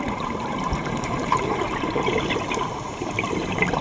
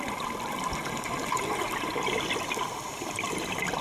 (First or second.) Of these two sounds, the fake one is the first